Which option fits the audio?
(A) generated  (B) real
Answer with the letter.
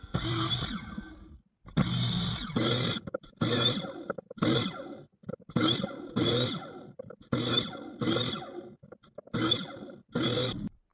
B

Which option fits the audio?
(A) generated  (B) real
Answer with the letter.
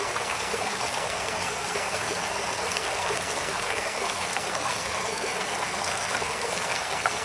A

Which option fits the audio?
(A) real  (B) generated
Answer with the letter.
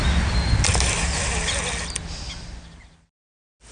A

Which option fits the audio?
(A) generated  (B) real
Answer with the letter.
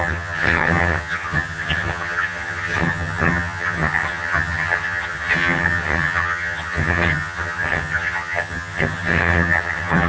A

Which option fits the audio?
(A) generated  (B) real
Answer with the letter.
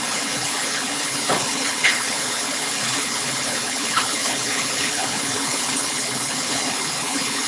A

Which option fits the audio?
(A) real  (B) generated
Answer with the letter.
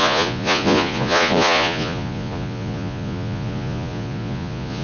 B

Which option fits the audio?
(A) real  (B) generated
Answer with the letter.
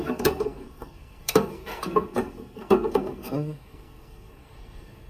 B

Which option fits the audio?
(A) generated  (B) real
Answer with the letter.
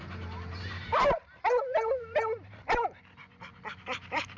A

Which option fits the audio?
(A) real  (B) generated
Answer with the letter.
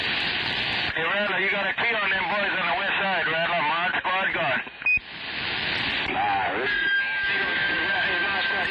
A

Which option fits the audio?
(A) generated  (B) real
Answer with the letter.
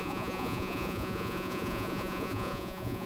A